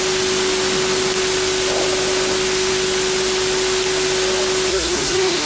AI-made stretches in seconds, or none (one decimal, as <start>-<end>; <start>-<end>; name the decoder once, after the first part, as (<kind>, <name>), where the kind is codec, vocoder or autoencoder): 4.7-5.5 (codec, SNAC)